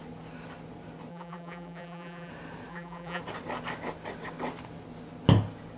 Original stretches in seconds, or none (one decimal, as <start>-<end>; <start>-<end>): 0.0-1.1; 2.3-2.7; 3.2-5.8